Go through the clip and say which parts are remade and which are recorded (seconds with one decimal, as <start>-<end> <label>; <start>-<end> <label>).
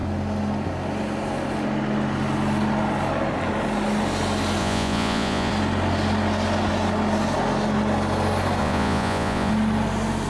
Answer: 0.0-4.6 recorded; 4.6-5.5 remade; 5.5-8.6 recorded; 8.6-9.5 remade; 9.5-10.3 recorded